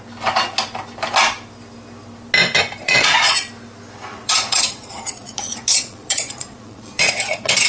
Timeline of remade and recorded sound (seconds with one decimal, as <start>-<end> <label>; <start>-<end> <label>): 0.0-2.8 recorded; 2.8-3.5 remade; 3.5-4.1 recorded; 4.1-7.7 remade